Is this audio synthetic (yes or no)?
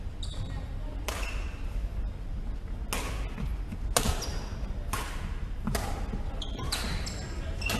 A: no